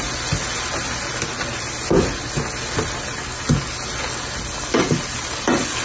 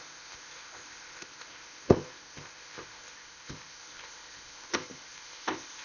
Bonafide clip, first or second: first